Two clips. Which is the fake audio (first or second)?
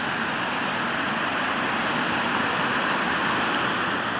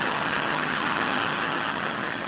second